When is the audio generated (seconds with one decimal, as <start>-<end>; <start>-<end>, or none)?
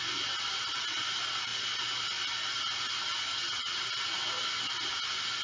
3.3-3.8